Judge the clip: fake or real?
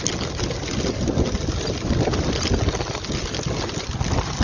real